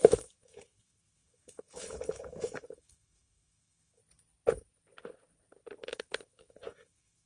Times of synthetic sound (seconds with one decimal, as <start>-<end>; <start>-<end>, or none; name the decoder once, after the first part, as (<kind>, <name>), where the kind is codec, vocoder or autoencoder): 0.0-4.0 (autoencoder, DAC-VAE); 5.9-7.3